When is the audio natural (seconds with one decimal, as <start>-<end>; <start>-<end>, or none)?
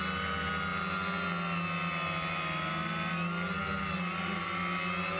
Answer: 0.0-5.2